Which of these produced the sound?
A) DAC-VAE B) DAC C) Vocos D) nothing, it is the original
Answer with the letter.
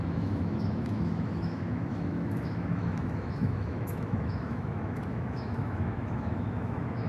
A